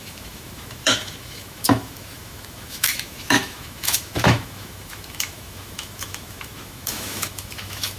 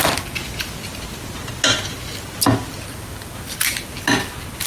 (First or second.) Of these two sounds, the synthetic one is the first